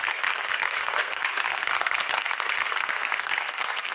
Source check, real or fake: fake